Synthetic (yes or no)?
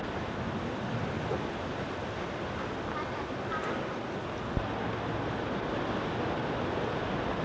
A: no